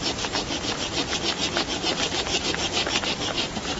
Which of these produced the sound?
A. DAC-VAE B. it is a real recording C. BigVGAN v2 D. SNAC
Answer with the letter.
B